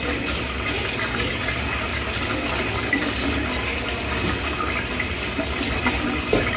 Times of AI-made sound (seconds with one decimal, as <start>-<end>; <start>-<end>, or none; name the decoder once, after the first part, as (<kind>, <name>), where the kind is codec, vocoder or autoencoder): none